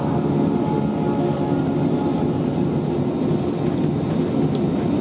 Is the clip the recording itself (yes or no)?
yes